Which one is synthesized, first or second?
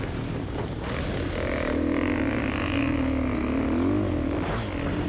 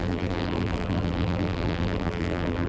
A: second